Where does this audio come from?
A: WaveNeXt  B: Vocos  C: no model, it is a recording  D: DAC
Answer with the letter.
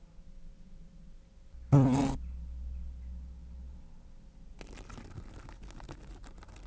C